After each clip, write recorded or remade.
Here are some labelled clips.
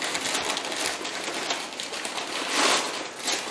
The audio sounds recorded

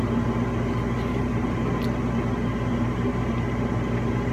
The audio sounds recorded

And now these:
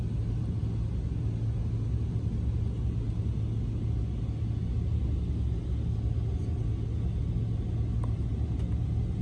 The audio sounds recorded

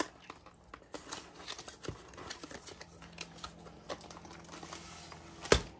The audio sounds recorded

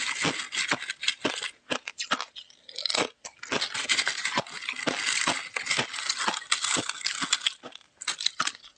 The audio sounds recorded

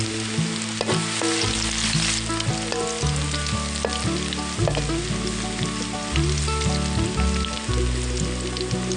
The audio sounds recorded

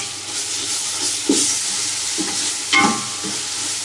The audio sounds recorded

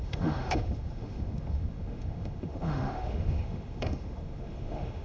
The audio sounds remade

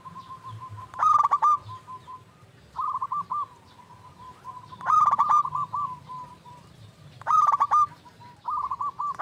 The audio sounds remade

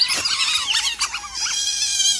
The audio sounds remade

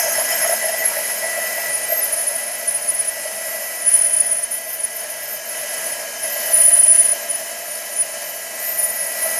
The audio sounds remade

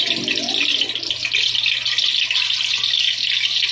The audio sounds recorded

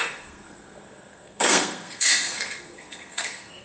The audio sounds remade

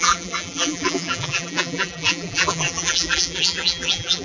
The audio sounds remade